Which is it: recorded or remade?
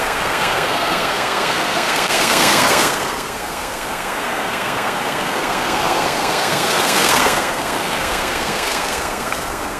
remade